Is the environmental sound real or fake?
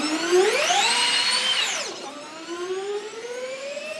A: fake